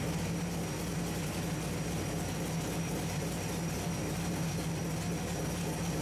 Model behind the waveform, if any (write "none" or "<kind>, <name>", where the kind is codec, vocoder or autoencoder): none